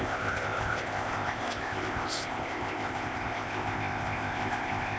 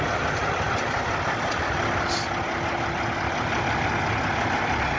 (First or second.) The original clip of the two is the second